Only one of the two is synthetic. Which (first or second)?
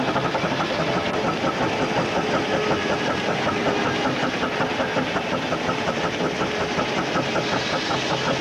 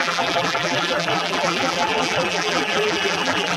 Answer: second